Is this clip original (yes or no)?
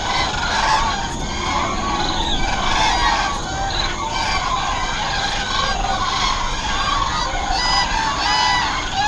yes